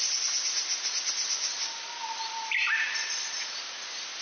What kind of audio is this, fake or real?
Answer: real